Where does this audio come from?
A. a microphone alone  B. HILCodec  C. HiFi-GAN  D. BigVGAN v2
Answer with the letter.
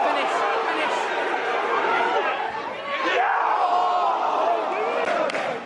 A